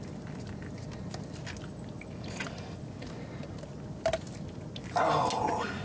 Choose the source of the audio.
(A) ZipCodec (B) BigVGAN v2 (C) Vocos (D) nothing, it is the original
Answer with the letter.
D